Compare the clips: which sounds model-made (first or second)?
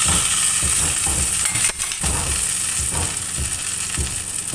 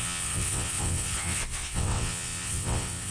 second